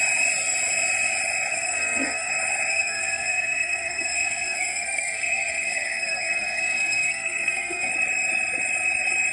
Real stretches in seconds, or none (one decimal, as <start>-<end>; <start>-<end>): 0.0-1.5; 2.3-2.7; 7.9-9.3